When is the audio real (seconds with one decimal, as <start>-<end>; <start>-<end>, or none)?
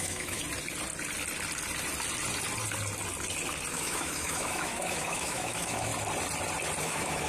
0.4-3.7; 5.9-6.8